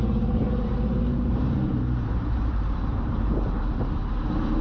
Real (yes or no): no